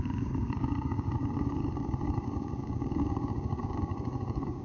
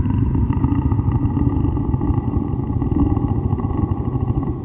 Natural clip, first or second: second